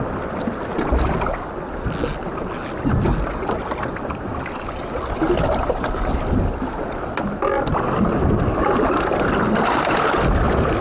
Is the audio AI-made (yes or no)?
no